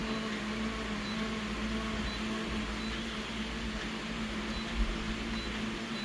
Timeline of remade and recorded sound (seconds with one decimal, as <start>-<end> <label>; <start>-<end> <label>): 0.0-6.0 recorded